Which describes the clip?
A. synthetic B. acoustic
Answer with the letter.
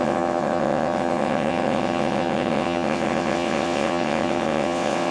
A